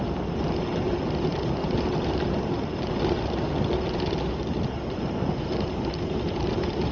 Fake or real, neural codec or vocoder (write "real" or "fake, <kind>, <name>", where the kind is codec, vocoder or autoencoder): real